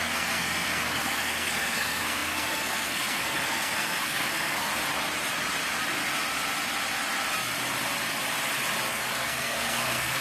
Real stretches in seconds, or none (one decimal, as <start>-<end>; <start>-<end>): 4.7-8.9